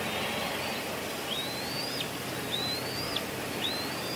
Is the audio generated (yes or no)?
no